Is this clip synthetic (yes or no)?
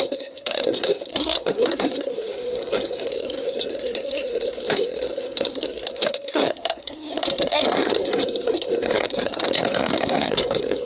yes